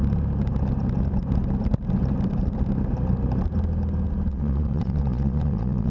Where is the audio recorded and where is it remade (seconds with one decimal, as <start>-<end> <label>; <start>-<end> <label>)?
0.0-4.3 recorded; 4.3-5.9 remade